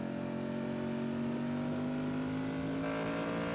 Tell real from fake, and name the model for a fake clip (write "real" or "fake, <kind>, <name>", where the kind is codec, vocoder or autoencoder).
real